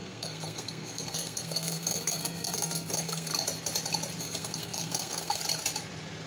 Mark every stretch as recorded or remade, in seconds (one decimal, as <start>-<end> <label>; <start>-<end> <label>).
0.0-3.3 remade; 3.3-4.2 recorded; 4.2-5.4 remade; 5.4-6.3 recorded